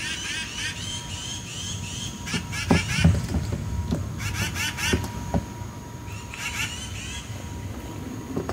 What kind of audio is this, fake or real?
real